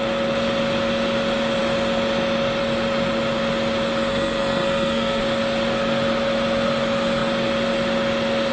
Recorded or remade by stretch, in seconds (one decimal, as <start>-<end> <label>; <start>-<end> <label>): 0.0-4.1 recorded; 4.1-5.2 remade; 5.2-8.5 recorded